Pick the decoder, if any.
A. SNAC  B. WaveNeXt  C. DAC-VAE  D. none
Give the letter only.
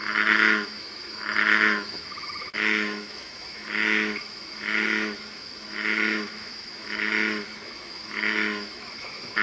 C